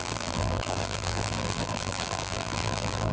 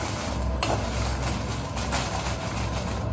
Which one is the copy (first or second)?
first